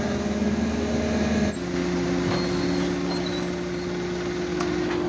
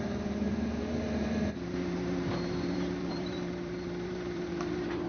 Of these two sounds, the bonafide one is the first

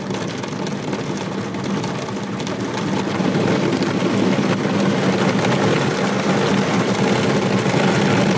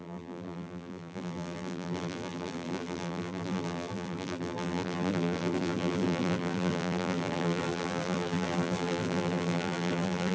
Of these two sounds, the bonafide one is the first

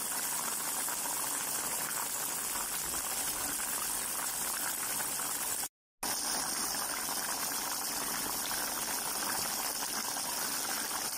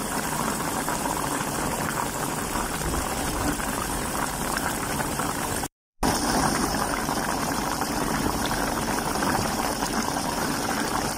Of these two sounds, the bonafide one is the first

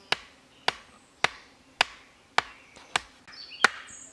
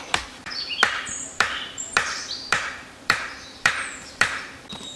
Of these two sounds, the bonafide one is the first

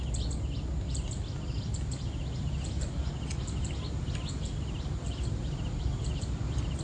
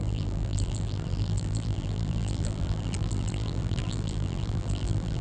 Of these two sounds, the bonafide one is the first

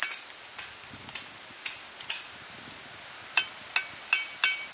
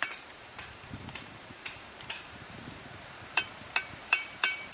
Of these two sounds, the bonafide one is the first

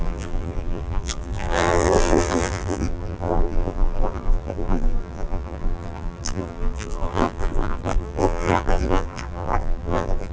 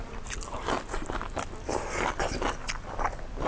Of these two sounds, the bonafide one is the second